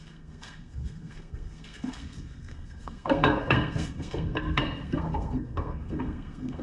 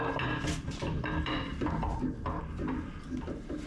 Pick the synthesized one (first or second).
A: first